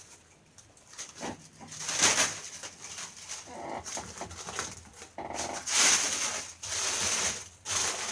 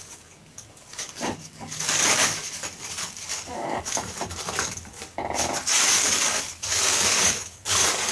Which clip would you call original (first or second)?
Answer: first